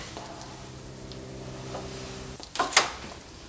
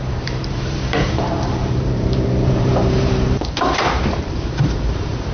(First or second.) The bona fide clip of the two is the first